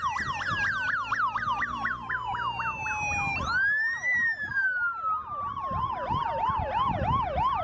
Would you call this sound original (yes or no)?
yes